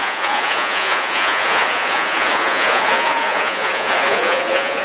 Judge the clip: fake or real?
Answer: fake